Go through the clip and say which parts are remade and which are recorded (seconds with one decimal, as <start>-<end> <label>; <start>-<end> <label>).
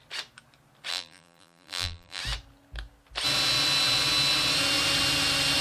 0.0-0.9 recorded; 0.9-2.2 remade; 2.2-5.6 recorded